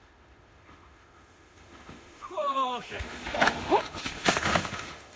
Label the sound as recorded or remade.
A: remade